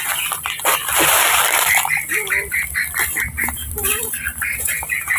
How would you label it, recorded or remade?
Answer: remade